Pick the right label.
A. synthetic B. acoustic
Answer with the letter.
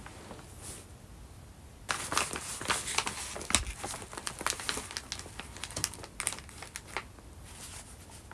B